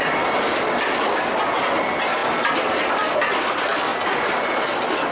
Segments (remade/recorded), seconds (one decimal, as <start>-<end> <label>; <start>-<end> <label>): 0.0-5.1 recorded